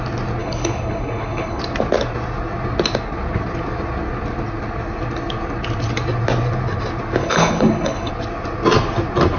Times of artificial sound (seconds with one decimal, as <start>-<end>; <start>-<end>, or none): 0.4-1.6; 7.2-8.1